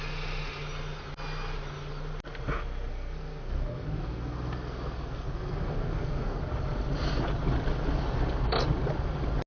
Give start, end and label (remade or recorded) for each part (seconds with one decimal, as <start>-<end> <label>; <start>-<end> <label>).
0.0-2.9 recorded; 2.9-6.4 remade; 6.4-9.5 recorded